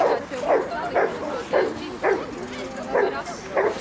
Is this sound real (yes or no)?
yes